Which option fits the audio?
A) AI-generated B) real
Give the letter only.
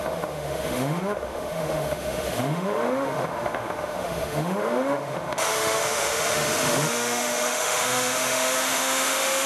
A